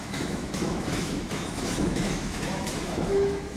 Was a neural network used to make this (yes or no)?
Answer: yes